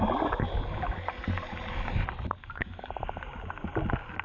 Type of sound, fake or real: real